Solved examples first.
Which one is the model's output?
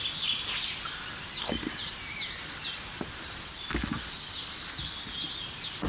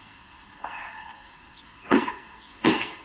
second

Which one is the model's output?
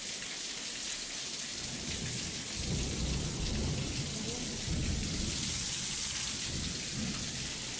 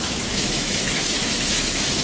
second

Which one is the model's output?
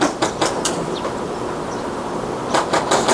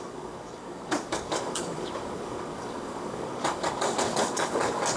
second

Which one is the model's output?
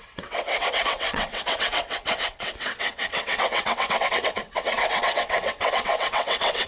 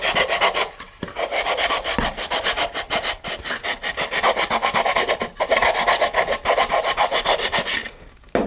first